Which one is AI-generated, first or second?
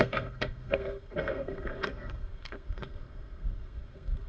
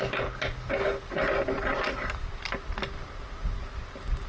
first